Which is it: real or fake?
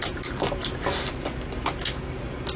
real